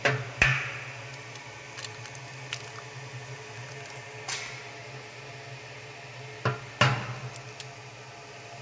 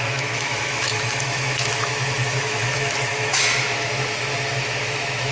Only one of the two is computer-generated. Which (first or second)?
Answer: second